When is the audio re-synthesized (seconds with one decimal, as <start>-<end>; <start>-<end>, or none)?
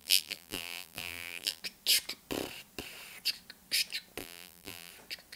0.0-1.6; 4.2-4.9